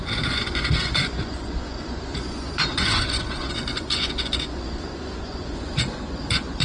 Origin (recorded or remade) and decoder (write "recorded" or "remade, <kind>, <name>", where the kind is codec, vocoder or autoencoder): remade, vocoder, Vocos